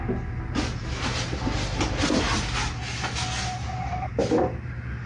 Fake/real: real